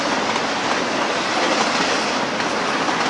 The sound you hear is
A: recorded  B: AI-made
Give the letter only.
A